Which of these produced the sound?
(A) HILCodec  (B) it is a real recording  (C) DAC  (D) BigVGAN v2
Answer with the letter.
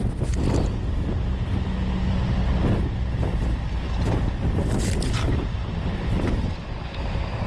B